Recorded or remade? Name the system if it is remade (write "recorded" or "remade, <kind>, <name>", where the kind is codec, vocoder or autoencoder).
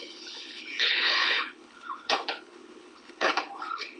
remade, codec, HILCodec